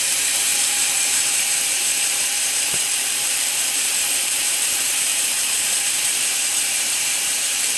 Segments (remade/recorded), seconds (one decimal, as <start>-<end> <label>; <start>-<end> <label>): 0.0-7.8 remade